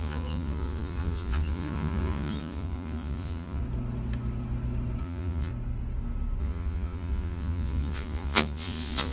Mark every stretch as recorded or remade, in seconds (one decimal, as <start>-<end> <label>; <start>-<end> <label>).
0.0-3.6 remade; 3.6-5.0 recorded; 5.0-5.5 remade; 5.5-6.4 recorded; 6.4-9.1 remade